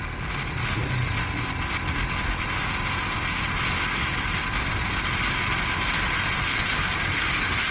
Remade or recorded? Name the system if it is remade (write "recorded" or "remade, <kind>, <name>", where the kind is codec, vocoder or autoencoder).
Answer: recorded